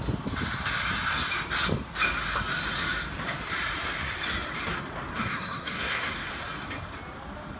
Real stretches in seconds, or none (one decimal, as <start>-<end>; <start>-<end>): 0.0-5.1; 6.3-7.6